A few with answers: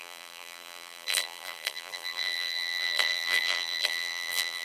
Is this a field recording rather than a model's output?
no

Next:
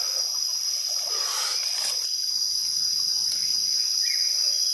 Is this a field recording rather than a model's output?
yes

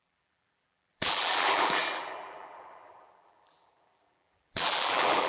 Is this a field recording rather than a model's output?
no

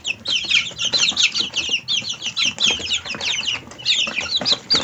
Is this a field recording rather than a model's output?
yes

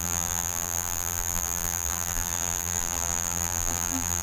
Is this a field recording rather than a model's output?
no